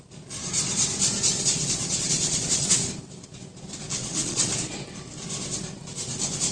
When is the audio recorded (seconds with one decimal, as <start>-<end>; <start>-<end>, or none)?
0.0-1.3; 2.9-4.0; 4.5-6.5